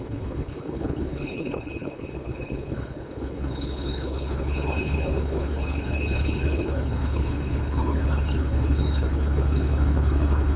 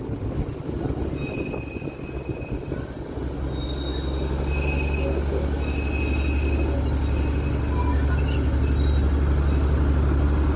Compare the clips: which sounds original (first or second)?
second